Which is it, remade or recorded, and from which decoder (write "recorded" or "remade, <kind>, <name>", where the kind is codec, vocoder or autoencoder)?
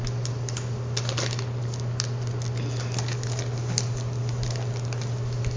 recorded